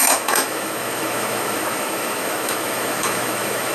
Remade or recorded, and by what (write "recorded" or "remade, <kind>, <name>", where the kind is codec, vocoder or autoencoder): remade, autoencoder, DAC-VAE